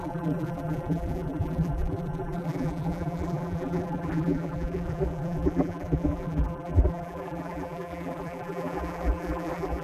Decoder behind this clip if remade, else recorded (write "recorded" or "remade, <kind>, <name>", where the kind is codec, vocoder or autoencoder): remade, vocoder, BigVGAN v2